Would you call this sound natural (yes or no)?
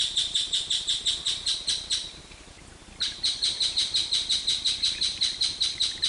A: no